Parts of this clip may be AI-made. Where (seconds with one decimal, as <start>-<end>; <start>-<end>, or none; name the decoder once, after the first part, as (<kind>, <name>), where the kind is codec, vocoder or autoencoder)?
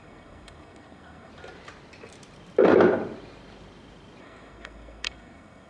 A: 0.0-1.3 (codec, SNAC); 4.2-5.7